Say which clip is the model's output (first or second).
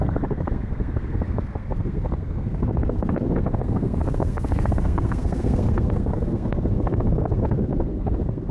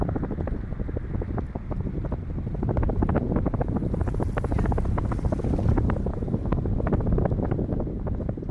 first